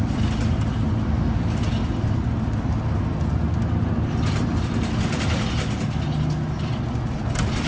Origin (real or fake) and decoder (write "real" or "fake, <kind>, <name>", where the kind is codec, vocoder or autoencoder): real